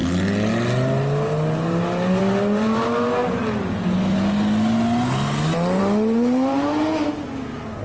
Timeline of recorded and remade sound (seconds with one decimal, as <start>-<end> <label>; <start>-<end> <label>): 0.0-7.8 recorded